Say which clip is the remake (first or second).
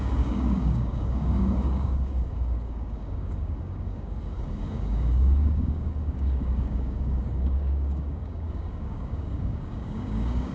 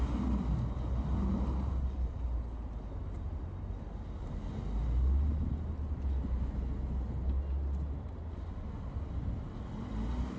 first